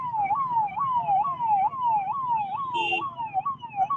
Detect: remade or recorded recorded